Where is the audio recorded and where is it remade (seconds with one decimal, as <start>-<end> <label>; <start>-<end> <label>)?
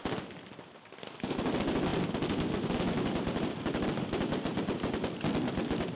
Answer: 0.0-6.0 recorded